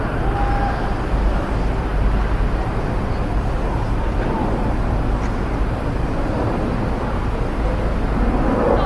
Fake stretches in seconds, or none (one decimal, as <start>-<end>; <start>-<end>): none